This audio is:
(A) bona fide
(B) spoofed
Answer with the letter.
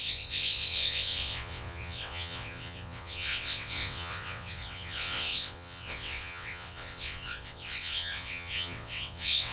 B